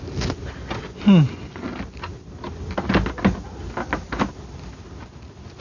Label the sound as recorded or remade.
recorded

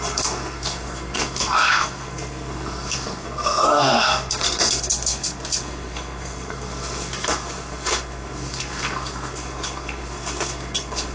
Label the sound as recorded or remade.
remade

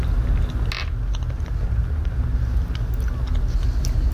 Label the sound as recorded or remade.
recorded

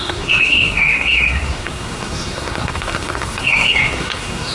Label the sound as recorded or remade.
remade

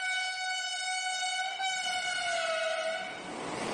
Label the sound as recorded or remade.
recorded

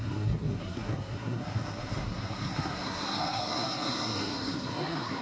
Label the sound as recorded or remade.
remade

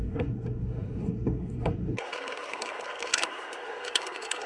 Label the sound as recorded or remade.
remade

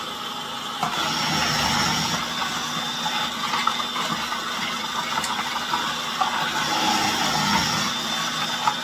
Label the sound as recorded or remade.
recorded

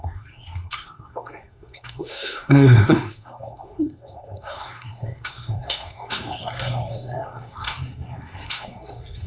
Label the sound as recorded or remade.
remade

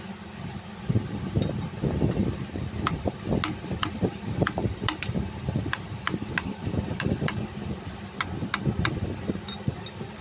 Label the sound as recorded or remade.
recorded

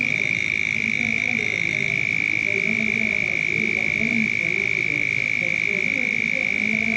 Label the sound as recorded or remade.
recorded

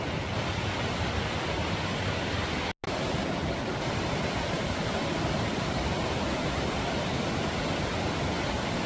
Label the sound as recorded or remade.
recorded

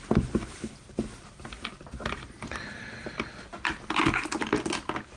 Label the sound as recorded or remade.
recorded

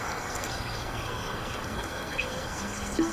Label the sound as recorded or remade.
remade